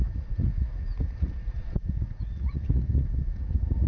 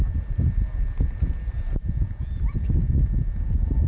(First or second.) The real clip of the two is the second